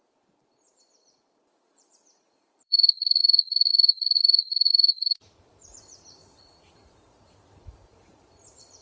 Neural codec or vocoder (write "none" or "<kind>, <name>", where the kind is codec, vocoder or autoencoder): vocoder, Vocos